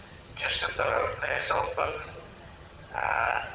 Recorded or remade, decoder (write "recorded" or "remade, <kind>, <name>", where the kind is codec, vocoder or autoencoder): remade, vocoder, HiFi-GAN